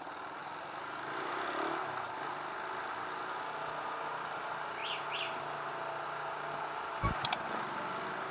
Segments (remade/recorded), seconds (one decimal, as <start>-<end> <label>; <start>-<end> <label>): 0.0-8.3 recorded